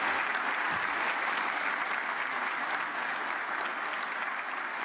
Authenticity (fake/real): real